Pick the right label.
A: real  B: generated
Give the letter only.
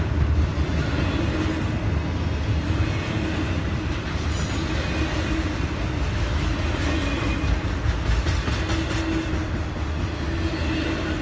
A